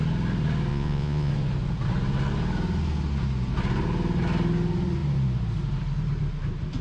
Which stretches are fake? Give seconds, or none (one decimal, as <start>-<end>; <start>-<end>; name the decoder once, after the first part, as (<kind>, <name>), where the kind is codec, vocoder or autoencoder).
0.7-1.3 (vocoder, Vocos)